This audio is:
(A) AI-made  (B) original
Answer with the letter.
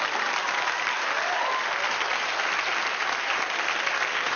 B